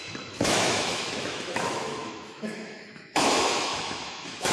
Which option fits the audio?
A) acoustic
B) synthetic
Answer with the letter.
B